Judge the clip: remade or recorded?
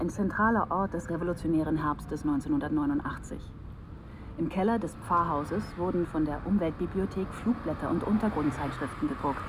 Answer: recorded